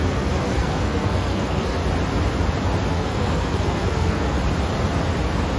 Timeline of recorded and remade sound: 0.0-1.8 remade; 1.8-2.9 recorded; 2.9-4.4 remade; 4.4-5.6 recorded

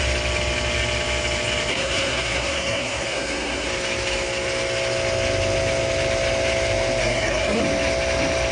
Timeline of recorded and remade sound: 0.0-1.7 recorded; 1.7-3.7 remade; 3.7-7.0 recorded; 7.0-7.6 remade; 7.6-8.5 recorded

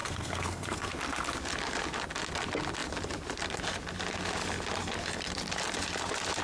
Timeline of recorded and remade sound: 0.0-0.9 remade; 0.9-6.4 recorded